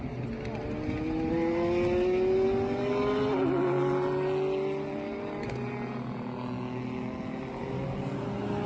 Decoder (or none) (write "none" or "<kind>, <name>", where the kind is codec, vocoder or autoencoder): none